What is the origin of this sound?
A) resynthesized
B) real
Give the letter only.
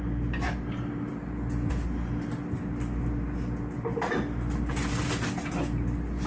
B